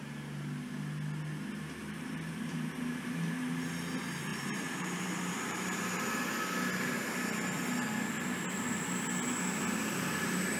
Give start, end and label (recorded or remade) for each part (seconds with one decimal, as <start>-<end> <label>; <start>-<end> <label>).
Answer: 0.0-1.8 recorded; 1.8-3.2 remade; 3.2-4.3 recorded; 4.3-6.2 remade; 6.2-10.6 recorded